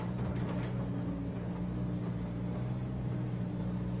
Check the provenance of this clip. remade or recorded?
recorded